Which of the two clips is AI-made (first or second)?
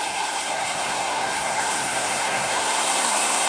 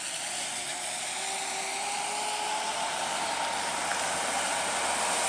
first